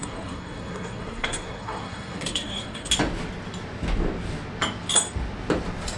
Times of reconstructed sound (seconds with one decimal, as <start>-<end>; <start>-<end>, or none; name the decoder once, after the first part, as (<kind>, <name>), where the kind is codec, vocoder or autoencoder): 0.0-2.9 (codec, SNAC)